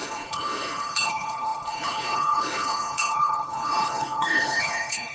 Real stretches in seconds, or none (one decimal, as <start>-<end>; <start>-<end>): none